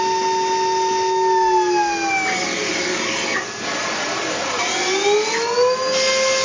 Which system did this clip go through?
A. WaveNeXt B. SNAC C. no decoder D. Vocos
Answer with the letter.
C